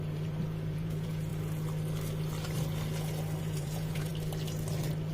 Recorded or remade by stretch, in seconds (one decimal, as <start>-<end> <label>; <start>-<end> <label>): 0.0-1.3 remade; 1.3-3.4 recorded; 3.4-4.1 remade; 4.1-5.1 recorded